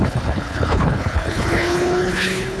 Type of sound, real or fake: fake